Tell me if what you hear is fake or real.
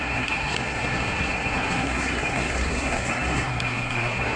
fake